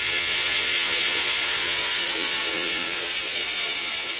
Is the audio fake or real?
fake